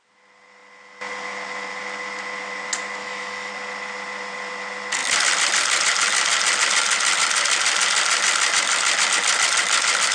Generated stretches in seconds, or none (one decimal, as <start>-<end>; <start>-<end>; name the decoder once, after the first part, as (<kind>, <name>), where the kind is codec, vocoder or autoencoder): 3.0-3.5 (autoencoder, DAC-VAE)